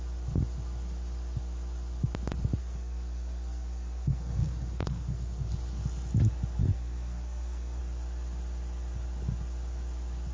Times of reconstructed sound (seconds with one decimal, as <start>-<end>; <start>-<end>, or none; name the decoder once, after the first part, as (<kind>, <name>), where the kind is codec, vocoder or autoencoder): 2.6-5.5 (codec, SNAC); 6.6-7.8